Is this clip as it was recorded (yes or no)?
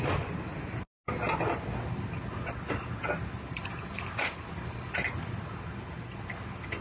yes